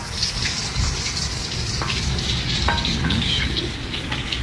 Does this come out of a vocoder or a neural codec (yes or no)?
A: yes